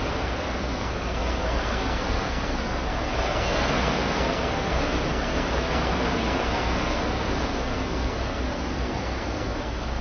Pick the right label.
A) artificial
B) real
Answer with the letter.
A